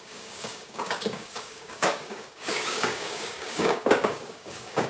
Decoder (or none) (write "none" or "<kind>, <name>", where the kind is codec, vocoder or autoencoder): codec, DAC